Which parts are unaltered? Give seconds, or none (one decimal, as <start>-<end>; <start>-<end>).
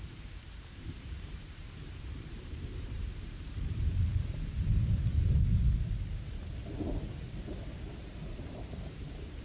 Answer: 5.5-6.7